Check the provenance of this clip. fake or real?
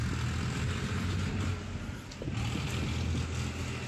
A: real